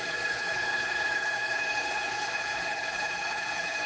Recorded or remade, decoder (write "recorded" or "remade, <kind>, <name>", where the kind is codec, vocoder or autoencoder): remade, codec, HILCodec